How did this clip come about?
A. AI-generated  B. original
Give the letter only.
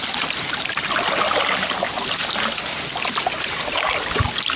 B